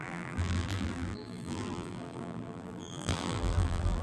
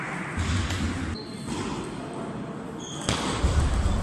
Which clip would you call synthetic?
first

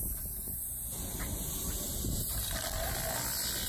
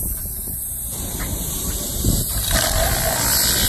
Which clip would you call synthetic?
second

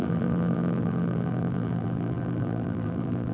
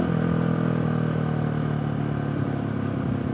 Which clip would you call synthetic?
first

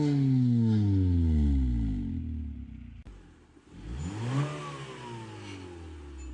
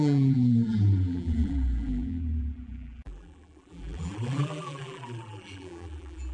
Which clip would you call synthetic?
second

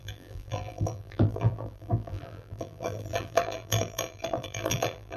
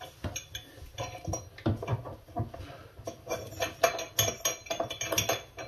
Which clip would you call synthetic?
first